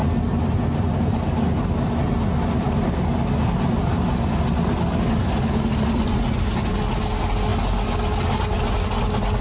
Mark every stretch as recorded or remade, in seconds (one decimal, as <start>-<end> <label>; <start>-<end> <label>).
0.0-9.4 recorded